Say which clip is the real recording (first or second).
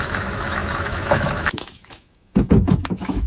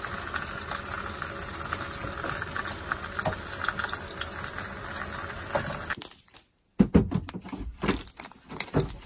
second